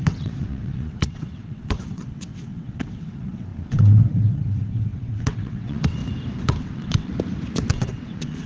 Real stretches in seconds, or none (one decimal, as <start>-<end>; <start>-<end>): 6.0-6.6; 7.1-7.7